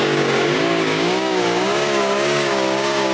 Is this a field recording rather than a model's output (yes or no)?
no